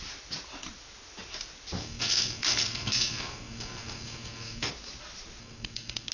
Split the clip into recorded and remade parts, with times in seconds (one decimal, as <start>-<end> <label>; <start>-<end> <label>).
0.0-1.8 recorded; 1.8-4.7 remade; 4.7-5.4 recorded; 5.4-6.1 remade